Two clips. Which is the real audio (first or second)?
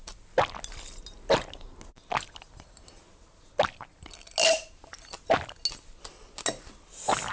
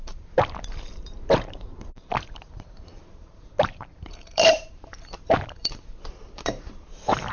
first